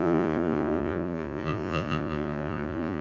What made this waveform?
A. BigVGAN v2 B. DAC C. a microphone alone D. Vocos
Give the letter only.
D